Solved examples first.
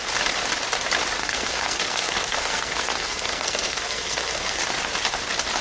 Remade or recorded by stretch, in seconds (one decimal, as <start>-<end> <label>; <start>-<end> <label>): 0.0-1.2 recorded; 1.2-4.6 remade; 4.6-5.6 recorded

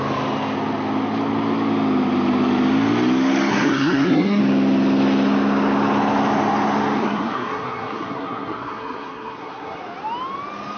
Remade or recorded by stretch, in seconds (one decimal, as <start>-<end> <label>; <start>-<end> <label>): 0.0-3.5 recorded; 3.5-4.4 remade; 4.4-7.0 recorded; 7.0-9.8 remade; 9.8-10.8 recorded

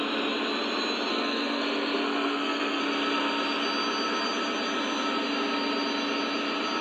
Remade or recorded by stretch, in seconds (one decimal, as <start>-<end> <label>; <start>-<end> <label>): 0.0-1.1 recorded; 1.1-2.8 remade; 2.8-6.8 recorded